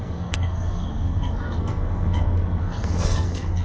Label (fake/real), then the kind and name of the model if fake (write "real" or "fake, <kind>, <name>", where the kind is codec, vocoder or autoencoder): fake, codec, SNAC